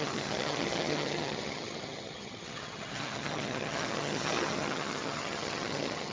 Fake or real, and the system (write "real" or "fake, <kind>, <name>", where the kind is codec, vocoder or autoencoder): fake, vocoder, HiFi-GAN